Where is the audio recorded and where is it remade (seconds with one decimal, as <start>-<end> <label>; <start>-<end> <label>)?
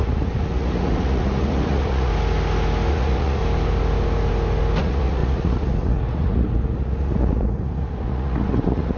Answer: 0.0-2.1 remade; 2.1-2.9 recorded; 2.9-3.4 remade; 3.4-4.8 recorded; 4.8-9.0 remade